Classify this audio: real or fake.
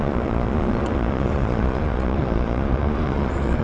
fake